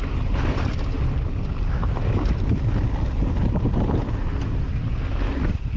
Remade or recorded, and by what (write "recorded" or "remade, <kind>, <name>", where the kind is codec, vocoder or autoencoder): recorded